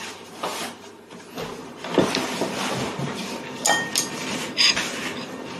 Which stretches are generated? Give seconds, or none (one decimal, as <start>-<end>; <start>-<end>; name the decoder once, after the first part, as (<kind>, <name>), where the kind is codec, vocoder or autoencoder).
none